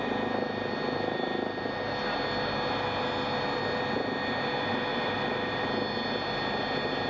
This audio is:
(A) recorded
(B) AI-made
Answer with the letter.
A